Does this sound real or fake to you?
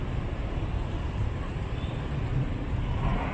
real